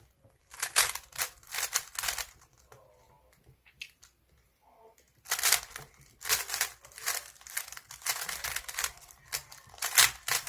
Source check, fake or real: real